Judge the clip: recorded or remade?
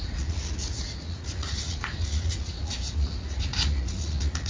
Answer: remade